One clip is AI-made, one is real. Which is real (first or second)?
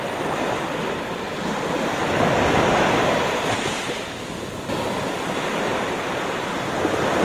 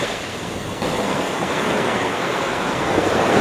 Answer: first